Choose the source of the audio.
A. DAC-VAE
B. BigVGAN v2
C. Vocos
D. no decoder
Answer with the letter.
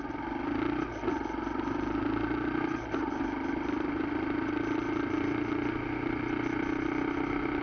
D